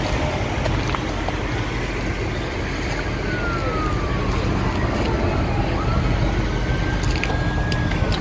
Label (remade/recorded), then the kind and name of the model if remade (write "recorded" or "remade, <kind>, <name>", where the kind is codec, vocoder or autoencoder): recorded